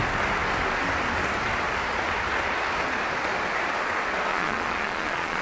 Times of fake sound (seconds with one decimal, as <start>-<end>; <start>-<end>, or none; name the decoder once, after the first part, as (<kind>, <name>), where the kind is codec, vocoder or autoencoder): 4.3-5.4 (vocoder, Vocos)

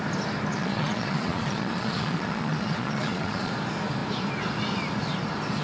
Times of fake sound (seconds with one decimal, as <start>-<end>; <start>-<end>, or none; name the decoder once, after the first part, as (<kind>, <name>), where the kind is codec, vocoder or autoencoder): 0.5-3.5 (vocoder, Vocos)